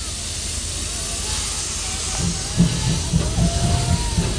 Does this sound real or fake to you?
real